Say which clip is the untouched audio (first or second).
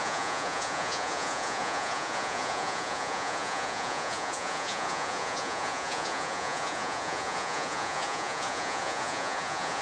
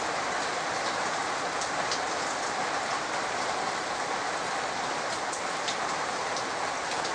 second